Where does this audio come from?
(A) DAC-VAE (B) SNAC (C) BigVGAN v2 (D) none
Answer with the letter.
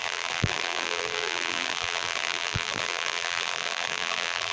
C